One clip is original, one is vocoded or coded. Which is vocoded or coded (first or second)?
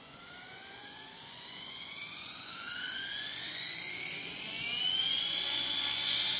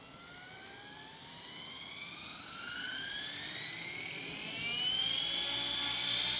first